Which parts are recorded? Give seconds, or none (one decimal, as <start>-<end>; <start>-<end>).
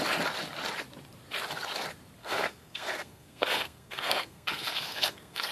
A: 0.0-2.2